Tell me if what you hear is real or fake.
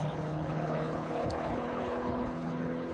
fake